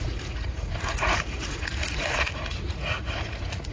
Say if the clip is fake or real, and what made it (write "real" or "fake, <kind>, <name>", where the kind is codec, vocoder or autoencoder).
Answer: fake, vocoder, Vocos